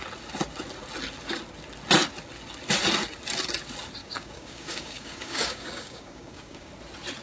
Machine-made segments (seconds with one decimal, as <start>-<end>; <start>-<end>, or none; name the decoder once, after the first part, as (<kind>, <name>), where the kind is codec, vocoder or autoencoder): 4.0-6.7 (codec, DAC)